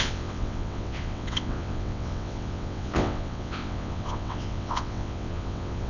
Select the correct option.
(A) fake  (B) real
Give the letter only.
A